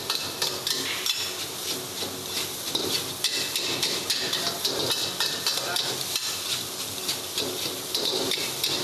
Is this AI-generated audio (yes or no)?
no